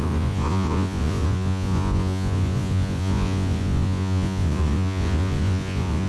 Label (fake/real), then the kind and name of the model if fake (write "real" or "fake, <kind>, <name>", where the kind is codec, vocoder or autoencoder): fake, vocoder, Vocos